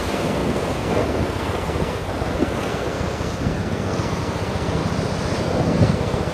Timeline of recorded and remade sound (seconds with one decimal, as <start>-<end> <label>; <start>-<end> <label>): 0.0-4.8 remade; 4.8-5.4 recorded; 5.4-6.3 remade